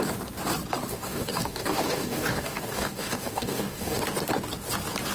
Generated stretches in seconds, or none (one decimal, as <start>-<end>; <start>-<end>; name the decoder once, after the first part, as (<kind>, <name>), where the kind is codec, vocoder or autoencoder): 0.9-4.0 (codec, DAC)